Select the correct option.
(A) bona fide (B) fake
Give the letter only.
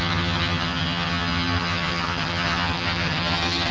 B